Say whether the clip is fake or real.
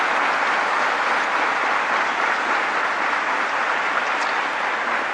real